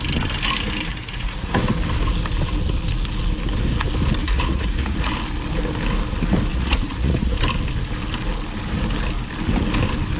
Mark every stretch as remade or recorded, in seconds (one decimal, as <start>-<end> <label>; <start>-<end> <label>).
0.0-0.9 recorded; 0.9-1.5 remade; 1.5-4.2 recorded; 4.2-5.1 remade; 5.1-6.5 recorded; 6.5-7.4 remade; 7.4-10.2 recorded